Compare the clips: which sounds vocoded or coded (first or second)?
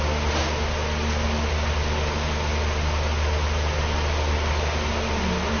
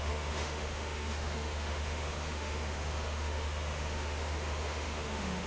second